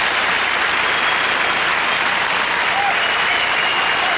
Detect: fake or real real